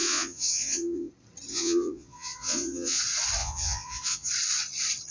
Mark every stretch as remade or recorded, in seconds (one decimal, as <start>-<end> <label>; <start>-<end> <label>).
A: 0.0-1.1 remade; 1.1-1.5 recorded; 1.5-3.0 remade; 3.0-3.4 recorded; 3.4-4.3 remade; 4.3-5.1 recorded